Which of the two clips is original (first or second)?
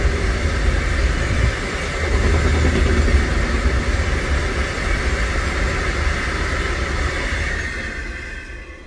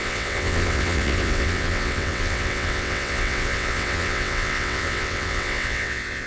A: first